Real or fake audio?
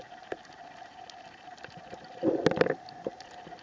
real